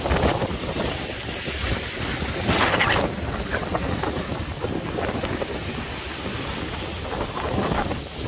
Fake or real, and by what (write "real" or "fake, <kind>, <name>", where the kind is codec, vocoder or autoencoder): real